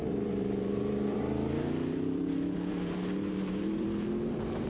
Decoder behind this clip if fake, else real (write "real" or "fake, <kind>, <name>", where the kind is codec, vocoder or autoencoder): fake, vocoder, BigVGAN v2